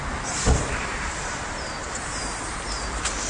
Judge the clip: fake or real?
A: real